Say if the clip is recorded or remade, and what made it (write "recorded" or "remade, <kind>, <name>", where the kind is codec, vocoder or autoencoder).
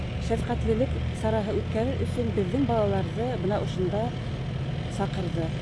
recorded